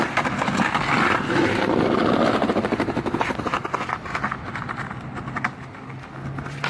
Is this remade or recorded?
recorded